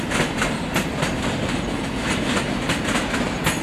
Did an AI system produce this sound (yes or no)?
no